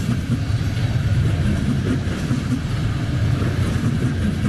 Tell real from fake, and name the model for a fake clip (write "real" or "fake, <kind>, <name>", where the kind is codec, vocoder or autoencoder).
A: real